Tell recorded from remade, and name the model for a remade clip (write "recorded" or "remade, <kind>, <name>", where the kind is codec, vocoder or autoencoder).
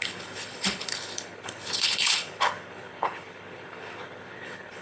remade, codec, HILCodec